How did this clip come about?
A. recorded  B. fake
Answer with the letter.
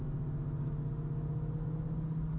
A